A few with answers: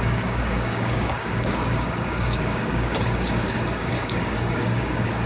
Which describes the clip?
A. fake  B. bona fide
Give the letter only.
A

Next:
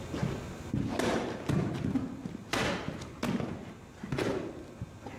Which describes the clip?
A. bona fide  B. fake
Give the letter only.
A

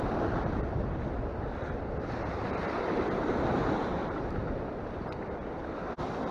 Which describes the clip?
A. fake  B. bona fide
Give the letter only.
A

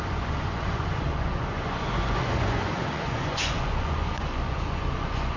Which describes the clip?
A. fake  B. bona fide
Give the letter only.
A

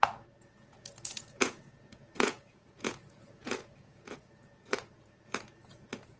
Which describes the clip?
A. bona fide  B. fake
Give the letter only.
B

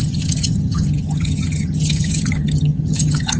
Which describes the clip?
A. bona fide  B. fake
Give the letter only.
B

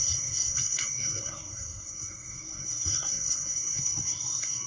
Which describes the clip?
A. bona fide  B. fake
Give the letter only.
B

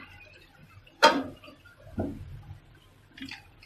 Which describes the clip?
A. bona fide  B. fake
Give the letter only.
B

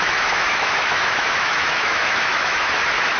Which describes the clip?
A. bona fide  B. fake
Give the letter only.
B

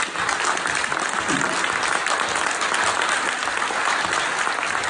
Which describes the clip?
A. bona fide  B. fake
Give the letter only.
A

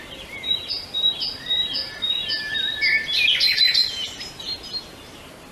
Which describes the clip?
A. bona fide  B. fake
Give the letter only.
A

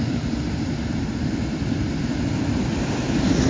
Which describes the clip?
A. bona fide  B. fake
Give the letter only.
A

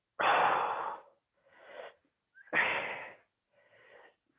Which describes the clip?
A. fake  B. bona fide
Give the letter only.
B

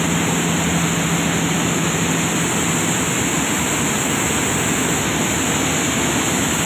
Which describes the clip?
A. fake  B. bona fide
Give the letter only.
B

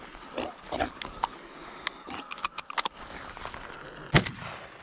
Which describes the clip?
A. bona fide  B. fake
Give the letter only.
A